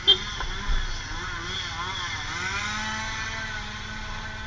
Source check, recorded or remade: recorded